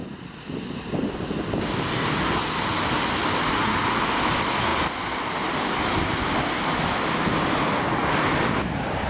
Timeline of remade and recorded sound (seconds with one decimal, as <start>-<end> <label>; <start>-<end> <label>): 0.0-9.1 recorded

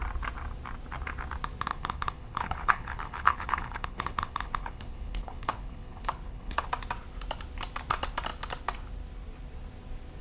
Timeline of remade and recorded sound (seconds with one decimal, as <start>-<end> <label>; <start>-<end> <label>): 0.0-1.7 recorded; 1.7-6.7 remade; 6.7-10.2 recorded

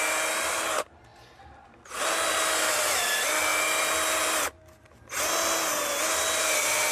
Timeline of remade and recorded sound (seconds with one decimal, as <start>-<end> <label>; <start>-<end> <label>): 0.0-6.9 recorded